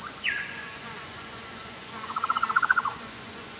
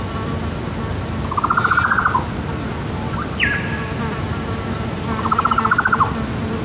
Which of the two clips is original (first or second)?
second